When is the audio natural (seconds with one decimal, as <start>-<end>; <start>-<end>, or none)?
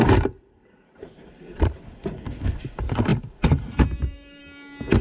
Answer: 1.7-3.1; 4.4-5.0